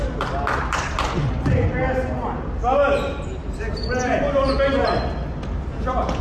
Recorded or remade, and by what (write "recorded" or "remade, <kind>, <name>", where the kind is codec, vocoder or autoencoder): recorded